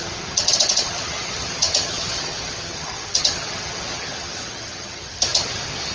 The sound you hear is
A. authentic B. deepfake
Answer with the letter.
B